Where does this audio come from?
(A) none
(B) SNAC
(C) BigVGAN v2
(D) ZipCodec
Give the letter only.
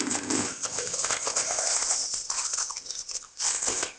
D